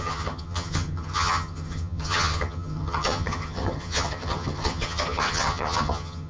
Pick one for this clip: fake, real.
fake